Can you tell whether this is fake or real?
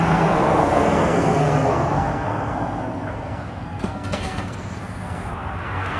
fake